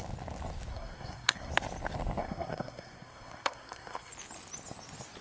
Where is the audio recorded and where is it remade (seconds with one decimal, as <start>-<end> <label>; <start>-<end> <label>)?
0.0-0.7 recorded; 0.7-1.5 remade; 1.5-2.2 recorded; 2.2-4.1 remade; 4.1-5.2 recorded